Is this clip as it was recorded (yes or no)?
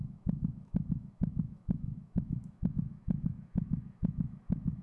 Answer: no